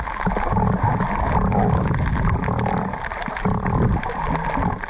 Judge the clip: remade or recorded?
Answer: recorded